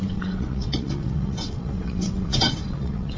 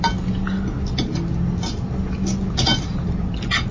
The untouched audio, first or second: second